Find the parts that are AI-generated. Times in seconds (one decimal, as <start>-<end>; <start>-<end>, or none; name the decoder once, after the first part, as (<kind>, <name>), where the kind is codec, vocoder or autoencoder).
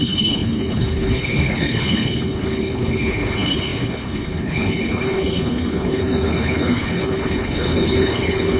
0.0-8.6 (codec, HILCodec)